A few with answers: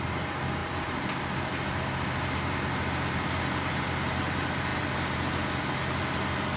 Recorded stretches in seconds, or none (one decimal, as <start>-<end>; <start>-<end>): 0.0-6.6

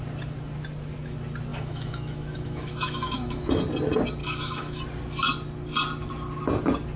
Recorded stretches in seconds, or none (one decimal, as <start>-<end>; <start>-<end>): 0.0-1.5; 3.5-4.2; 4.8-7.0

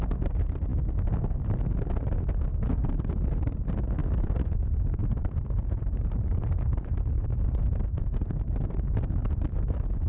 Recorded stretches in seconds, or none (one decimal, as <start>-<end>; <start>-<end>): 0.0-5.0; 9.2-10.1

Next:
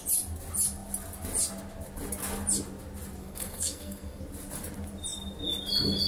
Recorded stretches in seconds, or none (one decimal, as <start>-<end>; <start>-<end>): 0.0-3.2; 4.2-6.1

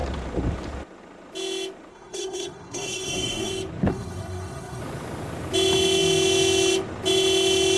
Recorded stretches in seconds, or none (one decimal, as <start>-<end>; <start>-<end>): 0.0-1.9; 3.5-3.9; 4.8-7.8

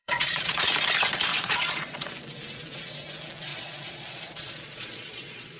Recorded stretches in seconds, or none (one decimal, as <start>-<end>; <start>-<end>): 0.7-1.3; 2.1-3.5

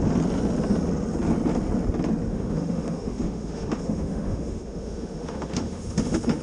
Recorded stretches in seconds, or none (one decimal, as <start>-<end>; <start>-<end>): 0.0-2.3

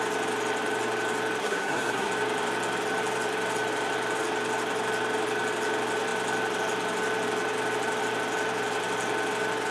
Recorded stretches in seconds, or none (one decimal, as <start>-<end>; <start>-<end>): 0.0-1.4; 2.1-9.7